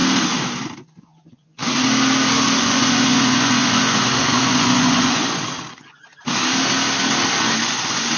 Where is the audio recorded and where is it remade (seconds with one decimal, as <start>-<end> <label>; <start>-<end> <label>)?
0.0-1.0 recorded; 1.0-1.6 remade; 1.6-2.6 recorded; 2.6-6.0 remade; 6.0-7.4 recorded; 7.4-8.2 remade